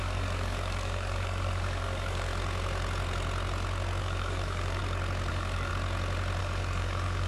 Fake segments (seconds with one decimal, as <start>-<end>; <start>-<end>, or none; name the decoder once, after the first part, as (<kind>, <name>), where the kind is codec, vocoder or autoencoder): 0.0-2.3 (codec, DAC); 4.0-4.8; 5.3-5.7; 6.4-7.3